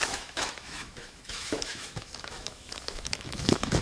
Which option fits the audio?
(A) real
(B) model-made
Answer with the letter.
B